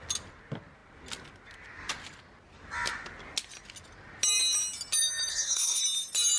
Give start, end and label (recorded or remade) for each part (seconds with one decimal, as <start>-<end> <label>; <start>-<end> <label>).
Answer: 0.0-5.3 recorded; 5.3-5.8 remade; 5.8-6.4 recorded